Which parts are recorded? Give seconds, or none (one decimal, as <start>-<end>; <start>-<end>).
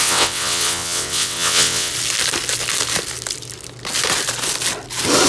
1.9-5.3